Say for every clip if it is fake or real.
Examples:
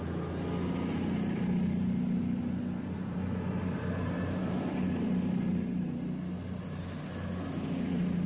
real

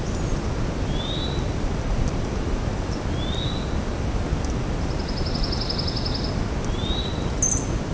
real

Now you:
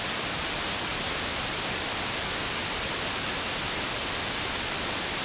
real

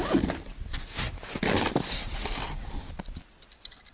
real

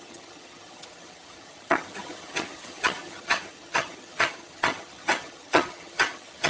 fake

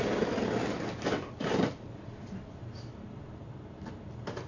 real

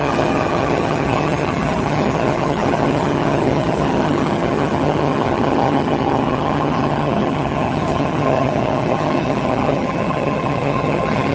fake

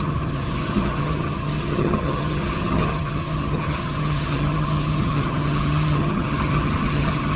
fake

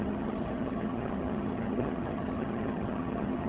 fake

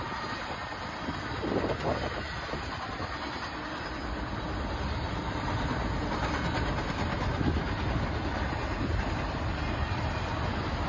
real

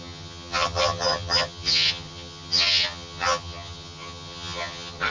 fake